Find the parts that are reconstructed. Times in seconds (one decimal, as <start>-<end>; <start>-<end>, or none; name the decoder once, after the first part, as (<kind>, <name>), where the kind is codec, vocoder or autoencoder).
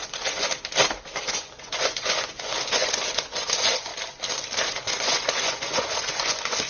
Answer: 0.0-0.5 (vocoder, Vocos); 1.2-3.9; 4.7-6.7